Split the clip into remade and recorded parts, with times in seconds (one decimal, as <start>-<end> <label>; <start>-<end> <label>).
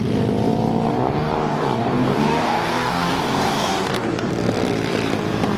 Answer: 0.0-0.9 recorded; 0.9-4.3 remade; 4.3-5.6 recorded